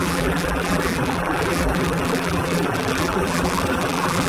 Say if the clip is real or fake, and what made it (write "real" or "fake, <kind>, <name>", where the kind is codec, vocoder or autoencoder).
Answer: fake, vocoder, BigVGAN v2